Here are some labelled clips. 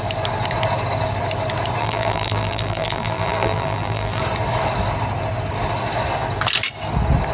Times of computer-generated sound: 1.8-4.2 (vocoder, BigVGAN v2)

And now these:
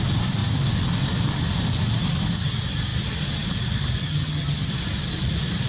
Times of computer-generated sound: 4.0-4.7 (vocoder, HiFi-GAN)

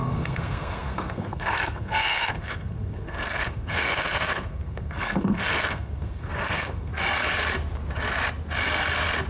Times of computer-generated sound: 0.0-6.9 (codec, SNAC)

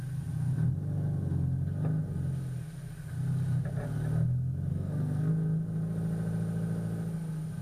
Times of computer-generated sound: 4.7-5.3 (codec, SNAC)

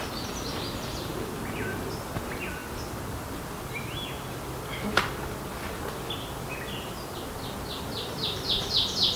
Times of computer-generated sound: none